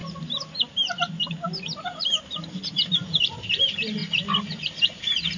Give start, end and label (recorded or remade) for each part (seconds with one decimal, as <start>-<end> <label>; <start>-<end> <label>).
0.0-5.4 recorded